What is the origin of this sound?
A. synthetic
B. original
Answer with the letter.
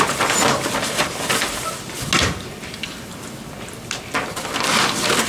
B